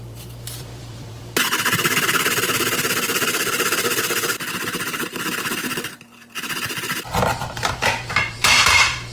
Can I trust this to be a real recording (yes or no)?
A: no